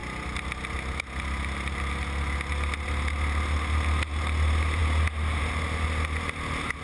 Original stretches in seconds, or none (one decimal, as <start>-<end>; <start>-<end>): 0.0-6.8